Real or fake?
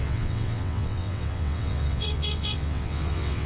fake